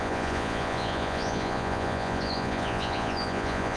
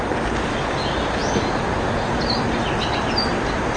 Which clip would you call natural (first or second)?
second